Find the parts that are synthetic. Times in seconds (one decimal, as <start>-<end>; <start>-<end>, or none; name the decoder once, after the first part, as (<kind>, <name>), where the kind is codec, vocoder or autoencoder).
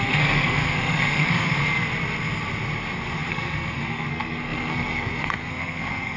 0.0-1.6 (codec, SNAC); 3.3-6.2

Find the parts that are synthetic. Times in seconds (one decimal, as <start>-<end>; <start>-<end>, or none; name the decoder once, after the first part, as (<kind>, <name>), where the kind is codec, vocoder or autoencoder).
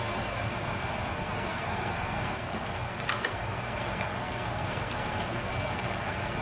0.0-6.4 (codec, SNAC)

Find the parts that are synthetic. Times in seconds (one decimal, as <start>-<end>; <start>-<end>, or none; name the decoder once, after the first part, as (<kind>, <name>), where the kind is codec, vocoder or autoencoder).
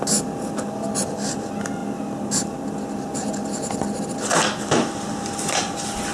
none